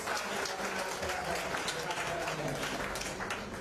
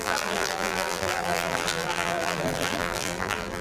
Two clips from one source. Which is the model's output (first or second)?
second